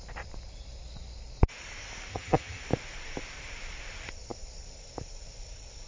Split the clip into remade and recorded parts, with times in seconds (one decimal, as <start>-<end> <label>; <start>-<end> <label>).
0.0-2.1 recorded; 2.1-2.6 remade; 2.6-5.9 recorded